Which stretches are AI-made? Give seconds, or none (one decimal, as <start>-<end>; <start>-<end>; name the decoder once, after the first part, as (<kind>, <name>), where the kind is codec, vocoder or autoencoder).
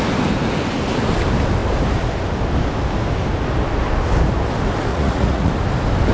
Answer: 4.9-5.5 (vocoder, Vocos)